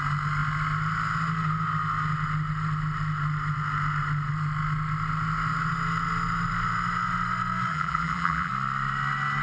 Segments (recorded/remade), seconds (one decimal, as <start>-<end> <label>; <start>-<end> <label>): 0.0-7.7 recorded; 7.7-8.5 remade; 8.5-9.4 recorded